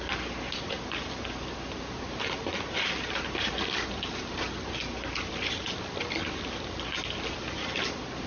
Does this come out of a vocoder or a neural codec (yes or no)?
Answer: no